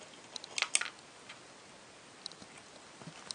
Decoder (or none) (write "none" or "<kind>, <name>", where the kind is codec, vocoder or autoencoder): none